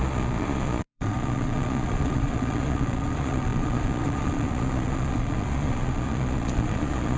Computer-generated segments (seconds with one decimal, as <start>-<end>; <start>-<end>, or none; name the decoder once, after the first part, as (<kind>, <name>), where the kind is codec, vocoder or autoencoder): 0.0-7.2 (vocoder, Vocos)